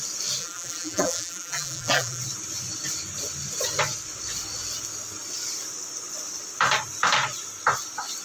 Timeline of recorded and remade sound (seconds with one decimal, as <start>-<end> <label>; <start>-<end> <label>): 0.0-0.4 recorded; 0.4-2.2 remade; 2.2-8.2 recorded